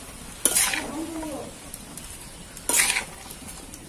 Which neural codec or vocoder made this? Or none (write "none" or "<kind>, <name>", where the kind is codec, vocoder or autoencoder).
none